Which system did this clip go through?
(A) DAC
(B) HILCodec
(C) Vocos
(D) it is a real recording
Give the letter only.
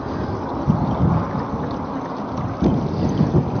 D